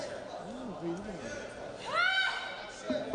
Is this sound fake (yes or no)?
no